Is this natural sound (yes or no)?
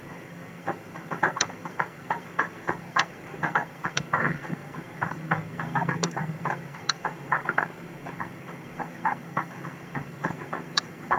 no